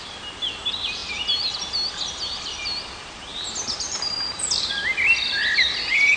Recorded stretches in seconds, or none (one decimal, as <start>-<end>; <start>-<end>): 0.0-3.3; 4.7-6.2